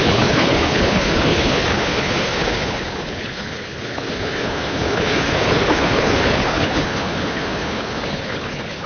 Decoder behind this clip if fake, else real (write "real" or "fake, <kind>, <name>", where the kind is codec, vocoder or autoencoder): fake, codec, HILCodec